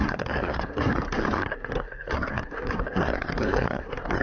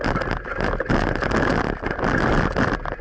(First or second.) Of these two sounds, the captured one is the second